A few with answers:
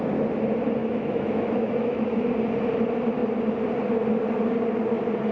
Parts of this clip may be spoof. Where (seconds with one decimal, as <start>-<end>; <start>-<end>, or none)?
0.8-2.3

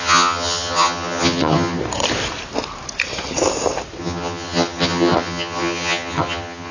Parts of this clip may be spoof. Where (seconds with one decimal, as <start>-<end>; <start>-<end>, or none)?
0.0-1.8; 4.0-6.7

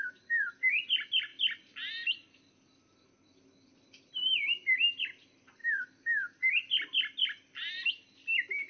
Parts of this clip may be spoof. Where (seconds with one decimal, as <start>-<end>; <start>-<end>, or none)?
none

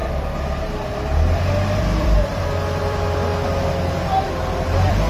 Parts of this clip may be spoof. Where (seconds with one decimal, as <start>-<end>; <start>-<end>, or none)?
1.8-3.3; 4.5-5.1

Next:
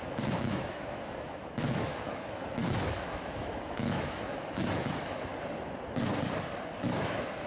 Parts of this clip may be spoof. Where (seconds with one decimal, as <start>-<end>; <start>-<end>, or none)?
0.0-5.3; 6.8-7.5

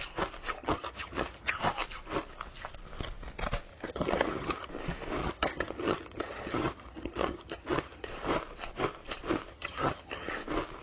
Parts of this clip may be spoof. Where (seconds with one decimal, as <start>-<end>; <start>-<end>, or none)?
0.6-1.6; 3.7-4.7; 5.2-8.1; 9.5-10.3

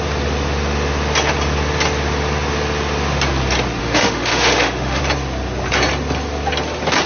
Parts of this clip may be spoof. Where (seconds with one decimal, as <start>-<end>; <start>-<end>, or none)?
3.8-5.0

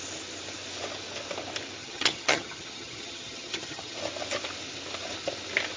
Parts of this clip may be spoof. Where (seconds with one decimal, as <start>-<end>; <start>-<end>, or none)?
1.8-4.0